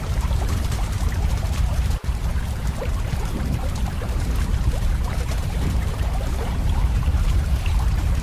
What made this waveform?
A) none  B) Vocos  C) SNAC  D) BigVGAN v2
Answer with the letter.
D